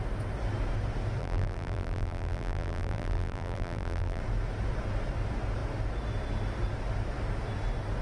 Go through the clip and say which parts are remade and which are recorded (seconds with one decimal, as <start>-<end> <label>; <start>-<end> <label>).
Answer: 0.0-1.2 recorded; 1.2-4.2 remade; 4.2-8.0 recorded